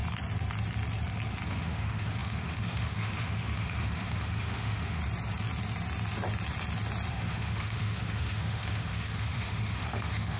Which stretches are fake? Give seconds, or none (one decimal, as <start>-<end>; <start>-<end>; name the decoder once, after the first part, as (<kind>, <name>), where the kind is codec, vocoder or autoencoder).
1.5-5.0 (autoencoder, DAC-VAE); 7.1-10.4